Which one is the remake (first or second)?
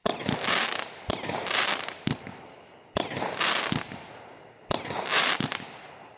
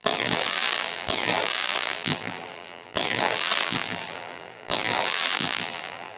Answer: second